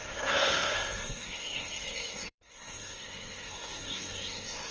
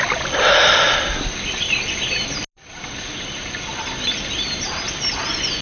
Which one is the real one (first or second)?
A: second